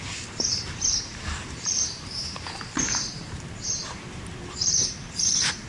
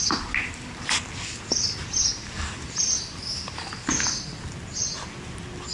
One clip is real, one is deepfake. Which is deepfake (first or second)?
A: first